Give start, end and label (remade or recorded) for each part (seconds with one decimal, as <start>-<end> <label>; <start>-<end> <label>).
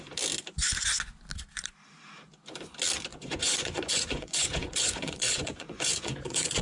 0.0-3.1 recorded; 3.1-6.6 remade